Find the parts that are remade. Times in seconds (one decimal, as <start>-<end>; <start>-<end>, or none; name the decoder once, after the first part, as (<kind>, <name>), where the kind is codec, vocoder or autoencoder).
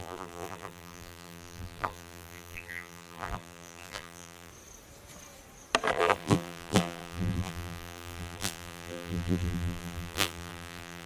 0.0-4.5 (vocoder, BigVGAN v2); 5.9-11.1